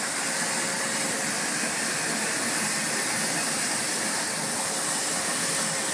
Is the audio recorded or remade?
recorded